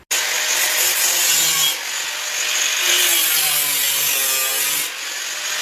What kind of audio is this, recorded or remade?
recorded